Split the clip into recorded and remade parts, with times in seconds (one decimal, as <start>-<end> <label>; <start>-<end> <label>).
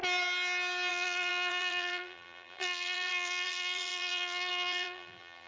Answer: 0.0-0.9 recorded; 0.9-5.5 remade